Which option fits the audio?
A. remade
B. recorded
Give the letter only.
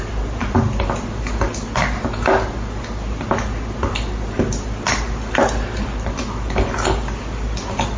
B